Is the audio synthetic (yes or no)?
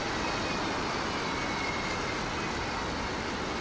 no